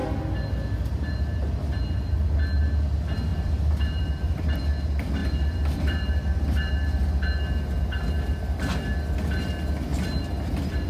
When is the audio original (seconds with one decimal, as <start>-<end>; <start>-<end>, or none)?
0.0-3.3; 4.6-5.2; 6.7-10.9